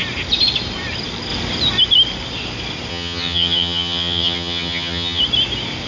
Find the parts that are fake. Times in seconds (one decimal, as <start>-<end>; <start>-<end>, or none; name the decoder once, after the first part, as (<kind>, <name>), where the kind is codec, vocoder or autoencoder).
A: 2.9-5.2 (vocoder, HiFi-GAN)